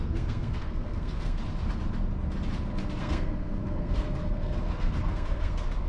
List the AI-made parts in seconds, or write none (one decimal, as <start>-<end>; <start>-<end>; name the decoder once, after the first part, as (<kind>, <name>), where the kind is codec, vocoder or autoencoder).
0.0-1.4 (codec, SNAC); 3.0-5.9

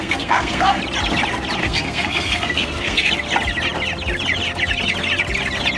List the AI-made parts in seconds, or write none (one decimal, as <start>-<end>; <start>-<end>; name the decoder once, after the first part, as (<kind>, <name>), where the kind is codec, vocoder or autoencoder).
0.0-0.8 (codec, SNAC); 1.6-3.1

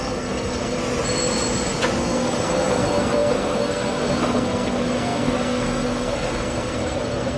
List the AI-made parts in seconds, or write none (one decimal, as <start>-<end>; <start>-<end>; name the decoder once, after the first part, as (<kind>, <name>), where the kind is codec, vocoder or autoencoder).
0.0-0.8 (codec, SNAC); 2.0-7.4

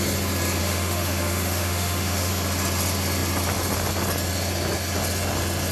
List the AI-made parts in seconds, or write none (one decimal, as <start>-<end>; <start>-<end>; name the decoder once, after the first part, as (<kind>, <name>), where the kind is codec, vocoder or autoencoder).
0.6-2.3 (autoencoder, DAC-VAE)

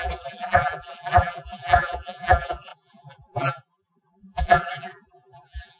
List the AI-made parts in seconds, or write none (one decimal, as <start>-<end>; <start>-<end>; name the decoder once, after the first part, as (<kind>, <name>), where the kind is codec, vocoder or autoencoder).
0.0-5.8 (vocoder, BigVGAN v2)

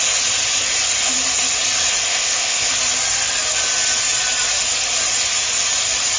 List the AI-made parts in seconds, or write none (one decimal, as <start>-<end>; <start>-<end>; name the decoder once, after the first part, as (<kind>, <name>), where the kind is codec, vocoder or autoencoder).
2.1-2.7 (codec, ZipCodec)